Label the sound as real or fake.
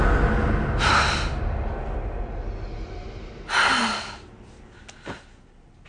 real